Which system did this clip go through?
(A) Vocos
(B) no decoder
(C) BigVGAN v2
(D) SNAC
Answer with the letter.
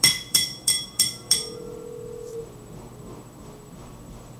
C